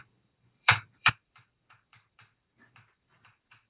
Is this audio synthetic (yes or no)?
yes